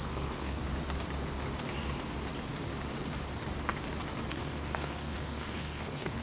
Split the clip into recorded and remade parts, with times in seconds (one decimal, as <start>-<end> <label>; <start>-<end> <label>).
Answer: 0.0-0.6 remade; 0.6-4.3 recorded; 4.3-6.2 remade